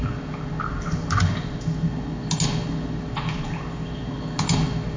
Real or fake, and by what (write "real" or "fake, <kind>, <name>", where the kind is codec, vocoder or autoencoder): real